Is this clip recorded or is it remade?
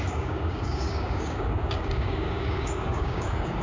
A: remade